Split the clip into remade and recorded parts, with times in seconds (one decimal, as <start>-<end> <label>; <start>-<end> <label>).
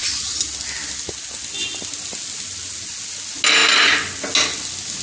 0.0-5.0 recorded